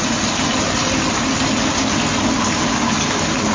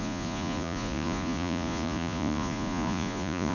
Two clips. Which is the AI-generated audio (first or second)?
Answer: second